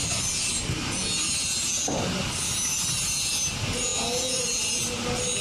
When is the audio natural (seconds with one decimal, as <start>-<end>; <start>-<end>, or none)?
0.0-5.4